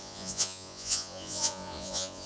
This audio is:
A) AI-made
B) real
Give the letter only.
A